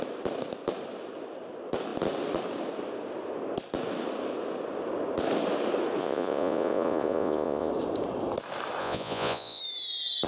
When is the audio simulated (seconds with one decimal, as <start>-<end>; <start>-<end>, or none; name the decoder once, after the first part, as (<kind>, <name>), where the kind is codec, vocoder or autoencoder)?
6.0-7.7 (vocoder, Vocos); 8.8-9.6